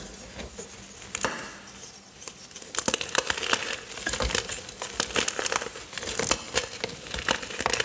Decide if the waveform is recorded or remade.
recorded